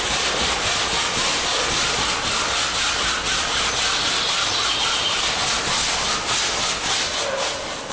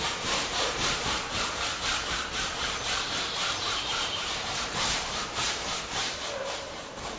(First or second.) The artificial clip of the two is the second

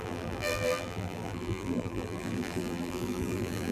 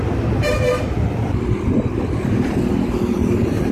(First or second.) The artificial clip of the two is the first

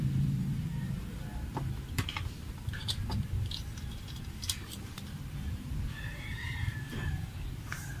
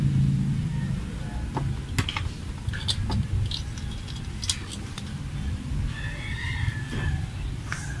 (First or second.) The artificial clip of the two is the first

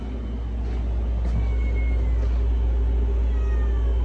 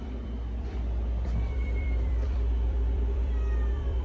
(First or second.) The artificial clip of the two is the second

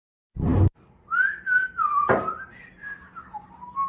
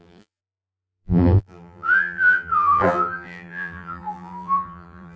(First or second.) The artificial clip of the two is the second